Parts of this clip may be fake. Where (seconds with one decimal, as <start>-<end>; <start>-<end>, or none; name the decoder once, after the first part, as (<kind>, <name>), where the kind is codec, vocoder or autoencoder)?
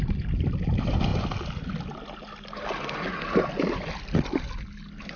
none